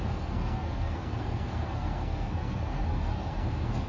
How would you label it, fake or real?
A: fake